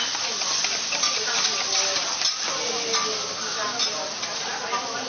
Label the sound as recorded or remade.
recorded